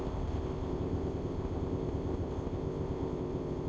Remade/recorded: remade